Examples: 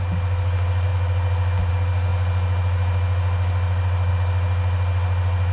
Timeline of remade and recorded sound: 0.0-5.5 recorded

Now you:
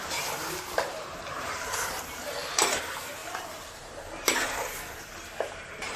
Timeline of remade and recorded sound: 0.0-6.0 remade

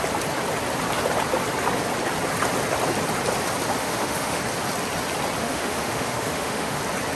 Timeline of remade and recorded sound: 0.0-3.8 recorded; 3.8-4.4 remade; 4.4-5.4 recorded; 5.4-6.8 remade; 6.8-7.2 recorded

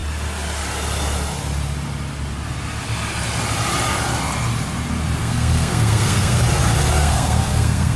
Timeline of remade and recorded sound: 0.0-5.2 recorded; 5.2-6.4 remade; 6.4-7.0 recorded; 7.0-8.0 remade